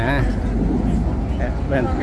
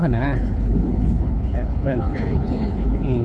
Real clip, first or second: first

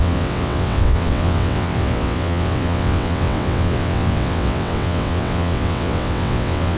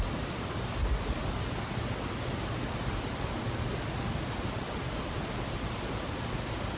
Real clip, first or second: second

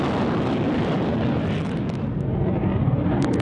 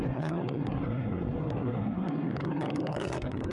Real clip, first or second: first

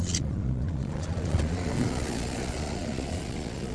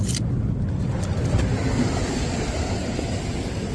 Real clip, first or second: second